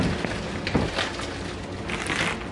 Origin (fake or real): real